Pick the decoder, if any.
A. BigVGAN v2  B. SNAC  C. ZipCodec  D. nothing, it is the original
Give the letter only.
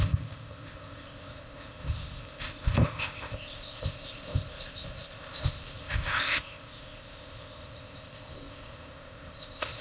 C